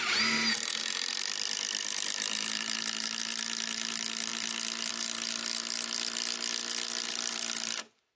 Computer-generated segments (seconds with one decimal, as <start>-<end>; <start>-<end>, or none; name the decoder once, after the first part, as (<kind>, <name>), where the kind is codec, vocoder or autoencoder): none